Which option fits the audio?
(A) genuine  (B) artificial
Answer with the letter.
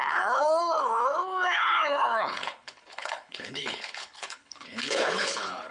B